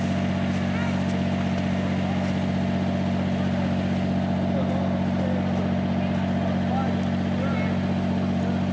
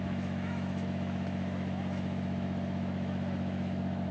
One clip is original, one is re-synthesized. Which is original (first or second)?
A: first